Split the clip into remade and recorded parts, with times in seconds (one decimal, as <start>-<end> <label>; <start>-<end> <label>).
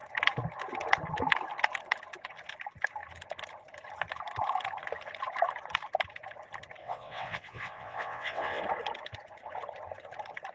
0.0-6.8 recorded; 6.8-8.6 remade; 8.6-10.5 recorded